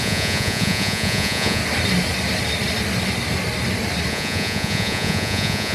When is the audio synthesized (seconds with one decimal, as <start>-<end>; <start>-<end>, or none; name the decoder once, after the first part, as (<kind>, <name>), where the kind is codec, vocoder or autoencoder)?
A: 0.0-1.6 (vocoder, Vocos); 4.1-5.7